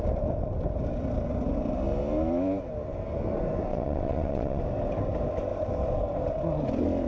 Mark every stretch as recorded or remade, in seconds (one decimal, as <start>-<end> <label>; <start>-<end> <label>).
0.0-3.7 recorded; 3.7-4.6 remade; 4.6-7.1 recorded